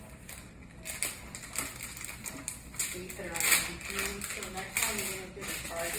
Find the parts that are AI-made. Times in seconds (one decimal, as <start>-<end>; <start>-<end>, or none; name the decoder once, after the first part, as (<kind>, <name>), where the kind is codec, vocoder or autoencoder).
none